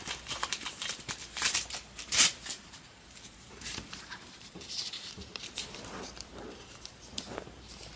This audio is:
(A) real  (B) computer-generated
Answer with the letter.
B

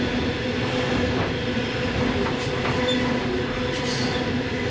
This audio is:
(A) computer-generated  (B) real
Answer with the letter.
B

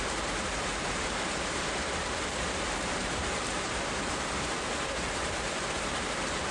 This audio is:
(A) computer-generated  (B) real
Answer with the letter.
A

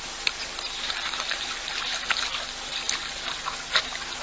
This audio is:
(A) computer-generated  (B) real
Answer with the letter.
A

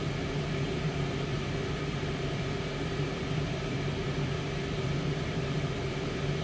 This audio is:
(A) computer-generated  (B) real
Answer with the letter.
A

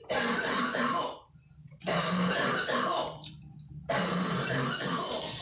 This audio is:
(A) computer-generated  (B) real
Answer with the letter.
A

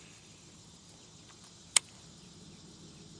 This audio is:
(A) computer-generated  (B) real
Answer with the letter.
A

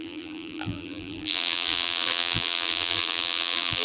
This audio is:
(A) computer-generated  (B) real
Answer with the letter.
A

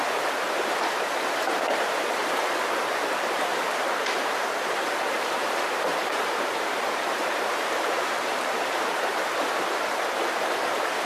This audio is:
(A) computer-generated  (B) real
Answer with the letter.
A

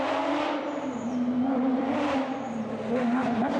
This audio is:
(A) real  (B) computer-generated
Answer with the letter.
B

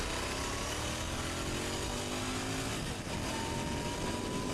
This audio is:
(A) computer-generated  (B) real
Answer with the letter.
B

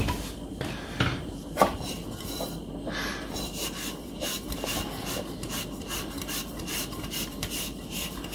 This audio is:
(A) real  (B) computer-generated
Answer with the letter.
B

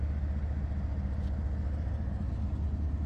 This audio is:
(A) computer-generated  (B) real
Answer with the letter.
B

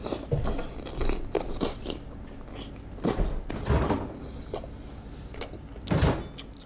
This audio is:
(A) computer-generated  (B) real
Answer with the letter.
B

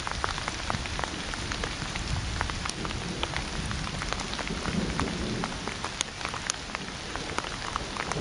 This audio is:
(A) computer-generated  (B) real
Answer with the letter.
B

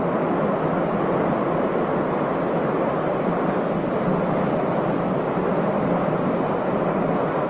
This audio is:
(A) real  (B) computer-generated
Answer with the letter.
B